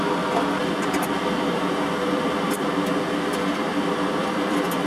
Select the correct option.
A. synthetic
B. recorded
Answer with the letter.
A